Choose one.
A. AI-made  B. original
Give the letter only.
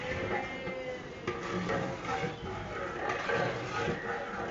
B